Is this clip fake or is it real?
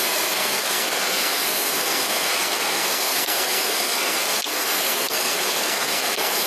fake